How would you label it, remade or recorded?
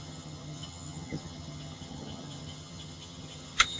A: remade